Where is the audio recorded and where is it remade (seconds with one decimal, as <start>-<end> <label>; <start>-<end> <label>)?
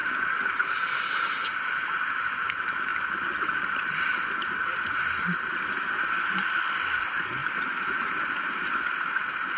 0.0-2.4 remade; 2.4-2.9 recorded; 2.9-4.3 remade; 4.3-7.4 recorded; 7.4-8.0 remade; 8.0-9.6 recorded